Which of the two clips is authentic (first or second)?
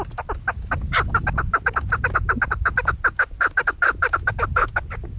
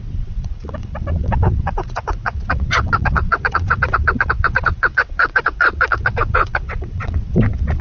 first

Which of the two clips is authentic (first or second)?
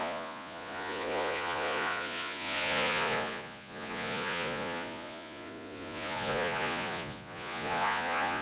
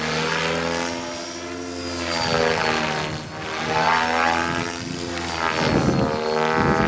second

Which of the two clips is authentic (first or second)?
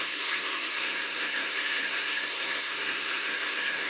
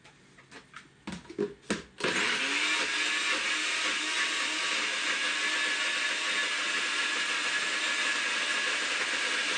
second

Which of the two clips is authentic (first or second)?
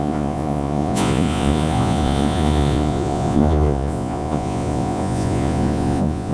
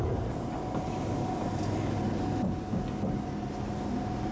second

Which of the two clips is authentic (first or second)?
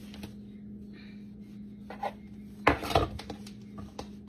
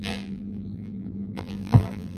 first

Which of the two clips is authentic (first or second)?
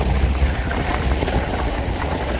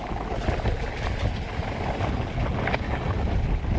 second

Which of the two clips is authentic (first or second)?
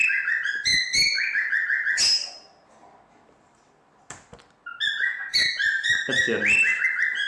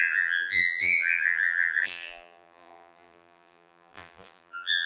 first